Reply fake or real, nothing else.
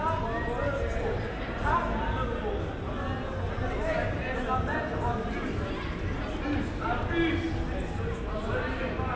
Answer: real